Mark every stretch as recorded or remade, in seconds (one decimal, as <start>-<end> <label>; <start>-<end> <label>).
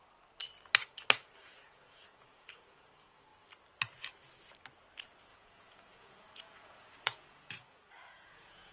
0.0-1.4 recorded; 1.4-2.9 remade; 2.9-5.3 recorded; 5.3-8.7 remade